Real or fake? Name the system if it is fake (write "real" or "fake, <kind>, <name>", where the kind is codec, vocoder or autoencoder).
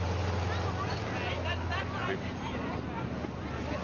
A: real